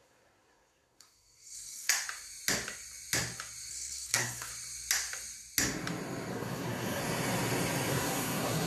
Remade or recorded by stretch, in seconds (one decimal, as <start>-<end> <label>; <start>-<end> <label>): 0.0-1.9 remade; 1.9-3.7 recorded; 3.7-4.5 remade; 4.5-6.3 recorded; 6.3-7.0 remade; 7.0-7.9 recorded; 7.9-8.7 remade